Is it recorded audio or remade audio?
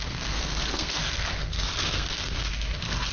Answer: remade